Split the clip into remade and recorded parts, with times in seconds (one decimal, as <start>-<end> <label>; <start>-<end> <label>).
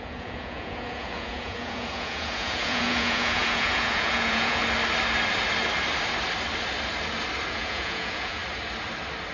0.0-4.6 remade; 4.6-7.5 recorded; 7.5-8.4 remade; 8.4-9.3 recorded